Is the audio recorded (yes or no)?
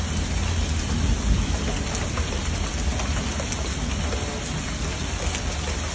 yes